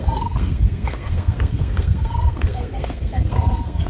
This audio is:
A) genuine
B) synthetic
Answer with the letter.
B